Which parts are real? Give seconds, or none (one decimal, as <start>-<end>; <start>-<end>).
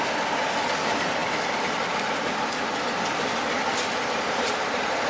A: 0.0-1.2; 3.6-5.1